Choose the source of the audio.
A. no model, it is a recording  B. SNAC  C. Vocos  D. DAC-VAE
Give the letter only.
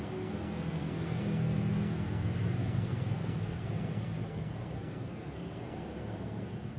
B